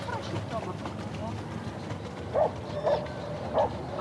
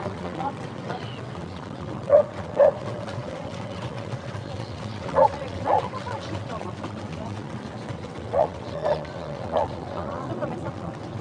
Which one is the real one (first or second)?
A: first